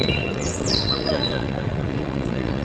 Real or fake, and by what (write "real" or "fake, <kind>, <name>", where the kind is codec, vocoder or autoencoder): fake, vocoder, WaveNeXt